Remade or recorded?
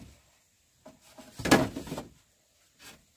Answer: recorded